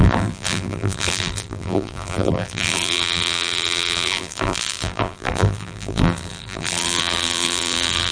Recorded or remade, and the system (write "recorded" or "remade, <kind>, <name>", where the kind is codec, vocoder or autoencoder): remade, vocoder, BigVGAN v2